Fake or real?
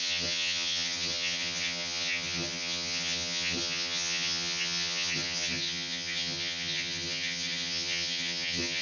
fake